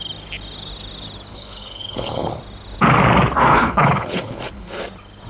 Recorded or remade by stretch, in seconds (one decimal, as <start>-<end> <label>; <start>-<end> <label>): 0.0-1.3 recorded; 1.3-2.4 remade; 2.4-3.5 recorded; 3.5-4.8 remade; 4.8-5.3 recorded